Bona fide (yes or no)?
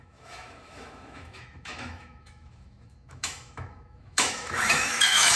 no